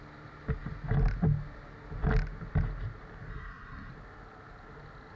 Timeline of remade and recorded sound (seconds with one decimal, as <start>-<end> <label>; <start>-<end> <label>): 0.0-3.3 recorded; 3.3-3.9 remade; 3.9-5.2 recorded